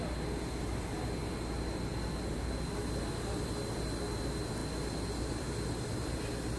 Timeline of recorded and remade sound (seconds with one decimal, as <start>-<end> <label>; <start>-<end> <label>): 0.0-6.6 recorded